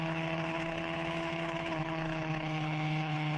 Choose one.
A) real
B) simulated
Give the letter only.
B